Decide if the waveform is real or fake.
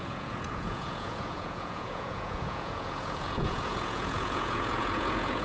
fake